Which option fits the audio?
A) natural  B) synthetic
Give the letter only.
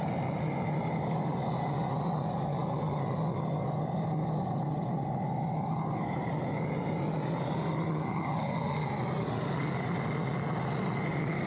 A